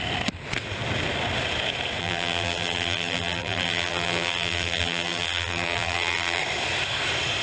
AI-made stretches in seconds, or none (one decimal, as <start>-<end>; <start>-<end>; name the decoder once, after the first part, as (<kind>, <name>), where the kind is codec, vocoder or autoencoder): 2.0-6.4 (vocoder, BigVGAN v2)